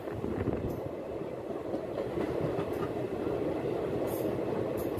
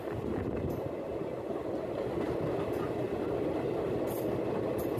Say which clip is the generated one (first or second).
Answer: first